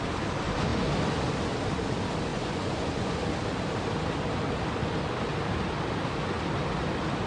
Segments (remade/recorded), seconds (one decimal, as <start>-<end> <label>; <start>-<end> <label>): 0.0-2.3 recorded; 2.3-3.2 remade; 3.2-7.3 recorded